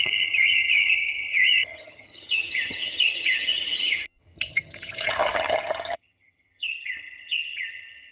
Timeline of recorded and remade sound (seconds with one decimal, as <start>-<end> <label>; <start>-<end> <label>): 0.0-8.1 remade